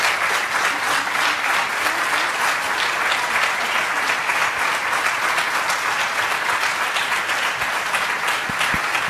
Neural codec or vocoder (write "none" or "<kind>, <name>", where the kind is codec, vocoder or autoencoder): none